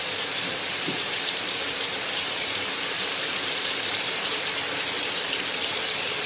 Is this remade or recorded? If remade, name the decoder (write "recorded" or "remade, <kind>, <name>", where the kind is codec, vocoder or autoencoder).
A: remade, vocoder, BigVGAN v2